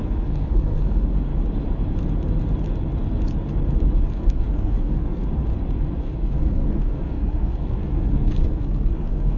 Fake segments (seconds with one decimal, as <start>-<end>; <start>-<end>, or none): 0.0-1.3; 4.1-5.2; 6.0-9.4